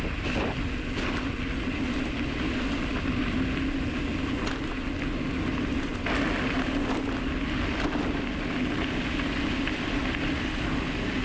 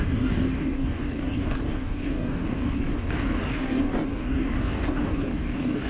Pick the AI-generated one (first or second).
second